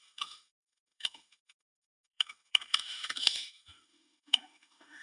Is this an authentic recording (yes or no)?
no